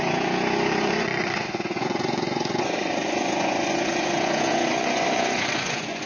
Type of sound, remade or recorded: remade